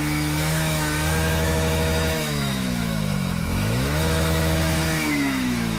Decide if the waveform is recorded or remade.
remade